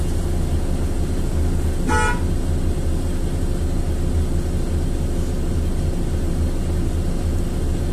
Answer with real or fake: real